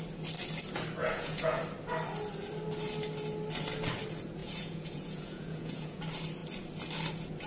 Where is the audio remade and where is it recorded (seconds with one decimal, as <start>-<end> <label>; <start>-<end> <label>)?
0.0-1.0 recorded; 1.0-1.6 remade; 1.6-4.4 recorded; 4.4-6.0 remade; 6.0-7.5 recorded